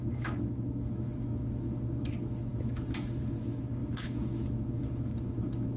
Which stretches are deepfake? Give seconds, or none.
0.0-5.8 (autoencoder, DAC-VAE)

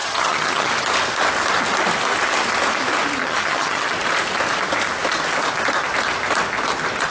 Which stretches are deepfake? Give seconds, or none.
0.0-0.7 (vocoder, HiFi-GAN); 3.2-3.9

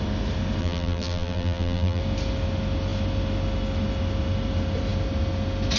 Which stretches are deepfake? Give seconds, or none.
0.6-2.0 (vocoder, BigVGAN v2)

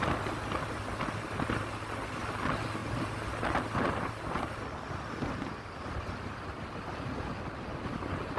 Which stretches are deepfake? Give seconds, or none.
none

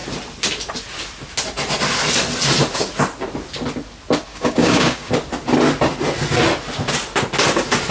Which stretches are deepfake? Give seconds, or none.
4.3-5.1 (codec, DAC)